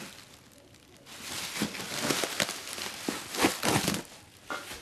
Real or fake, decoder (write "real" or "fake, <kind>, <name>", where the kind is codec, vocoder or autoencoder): real